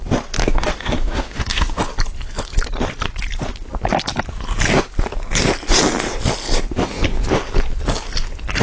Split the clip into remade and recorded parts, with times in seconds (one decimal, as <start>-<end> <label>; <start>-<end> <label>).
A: 0.0-0.4 recorded; 0.4-1.8 remade; 1.8-8.6 recorded